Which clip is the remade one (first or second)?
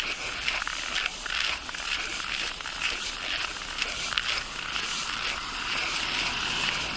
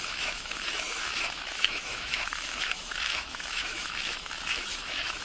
second